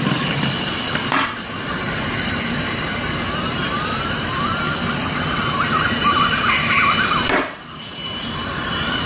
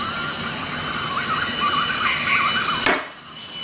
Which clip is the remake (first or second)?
first